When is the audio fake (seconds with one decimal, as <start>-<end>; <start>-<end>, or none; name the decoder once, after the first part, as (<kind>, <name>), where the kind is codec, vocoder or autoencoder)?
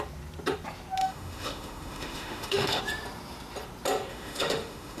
1.0-2.8 (autoencoder, DAC-VAE); 4.1-5.0